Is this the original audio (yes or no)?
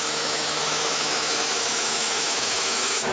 no